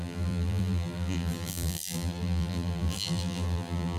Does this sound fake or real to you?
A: fake